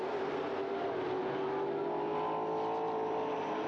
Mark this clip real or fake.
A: real